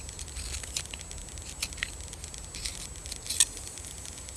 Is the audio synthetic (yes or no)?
no